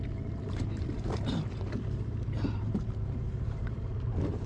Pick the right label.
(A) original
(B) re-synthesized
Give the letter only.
B